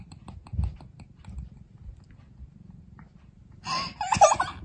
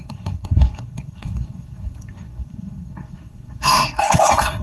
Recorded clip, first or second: first